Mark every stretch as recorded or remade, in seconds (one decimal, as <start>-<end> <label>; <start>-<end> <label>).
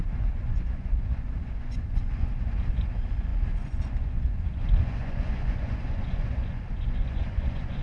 0.0-7.8 remade